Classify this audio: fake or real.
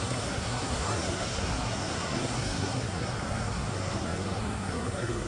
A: fake